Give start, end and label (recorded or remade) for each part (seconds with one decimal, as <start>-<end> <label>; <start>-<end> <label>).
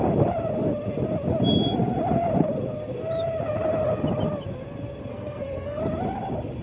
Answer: 0.0-5.1 recorded; 5.1-5.8 remade; 5.8-6.6 recorded